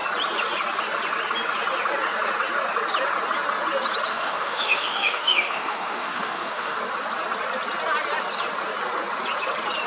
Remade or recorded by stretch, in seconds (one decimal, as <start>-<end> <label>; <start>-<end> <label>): 0.0-4.1 recorded; 4.1-6.8 remade; 6.8-9.9 recorded